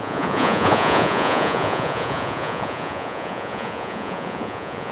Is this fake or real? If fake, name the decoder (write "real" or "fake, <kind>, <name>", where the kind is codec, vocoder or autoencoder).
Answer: fake, vocoder, Vocos